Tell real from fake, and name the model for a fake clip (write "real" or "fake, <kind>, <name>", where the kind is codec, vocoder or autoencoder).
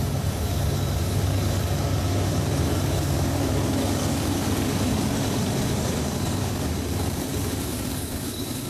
fake, codec, DAC